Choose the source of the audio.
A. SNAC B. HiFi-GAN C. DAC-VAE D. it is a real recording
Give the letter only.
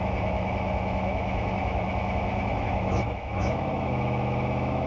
C